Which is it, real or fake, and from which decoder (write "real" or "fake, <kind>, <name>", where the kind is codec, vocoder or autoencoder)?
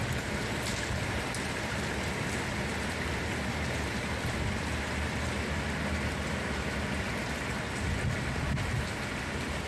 real